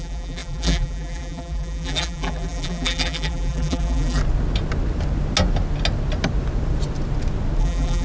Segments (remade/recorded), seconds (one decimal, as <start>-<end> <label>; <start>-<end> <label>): 0.0-4.2 remade; 4.2-7.6 recorded; 7.6-8.0 remade